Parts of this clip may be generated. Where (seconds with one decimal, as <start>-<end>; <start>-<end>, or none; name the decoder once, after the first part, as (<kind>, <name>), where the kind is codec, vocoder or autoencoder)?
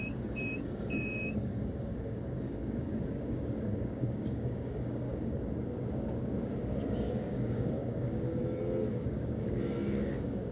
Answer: 0.0-8.4 (codec, DAC); 8.9-10.5